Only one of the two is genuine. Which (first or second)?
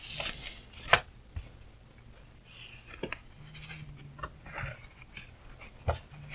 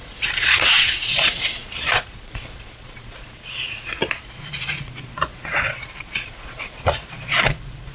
first